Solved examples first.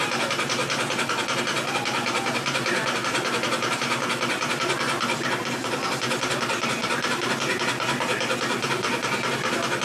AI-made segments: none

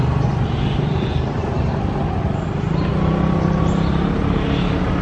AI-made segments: none

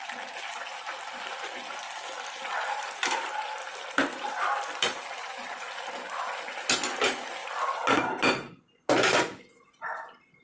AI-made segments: none

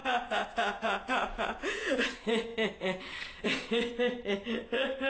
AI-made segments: 0.0-2.5 (vocoder, Vocos); 3.2-4.2

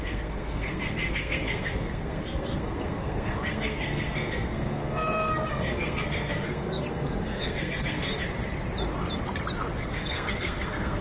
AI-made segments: 0.0-8.1 (codec, SNAC); 9.8-11.0

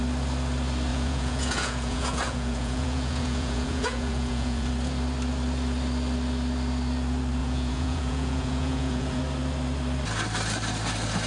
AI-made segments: 0.9-4.7 (vocoder, Vocos); 7.4-9.2

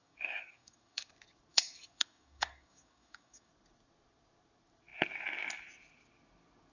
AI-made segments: 0.0-1.1 (codec, DAC); 1.5-3.5